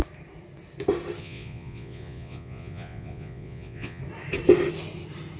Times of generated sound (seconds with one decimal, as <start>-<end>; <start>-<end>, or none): 1.2-4.0